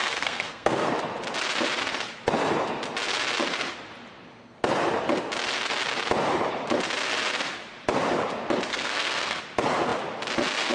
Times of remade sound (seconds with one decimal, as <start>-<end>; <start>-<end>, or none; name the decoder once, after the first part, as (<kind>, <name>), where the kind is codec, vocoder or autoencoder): 0.0-0.9 (codec, SNAC); 8.7-9.4